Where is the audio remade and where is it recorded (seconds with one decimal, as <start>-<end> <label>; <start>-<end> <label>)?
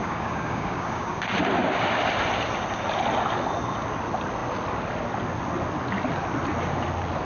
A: 0.0-1.2 remade; 1.2-7.2 recorded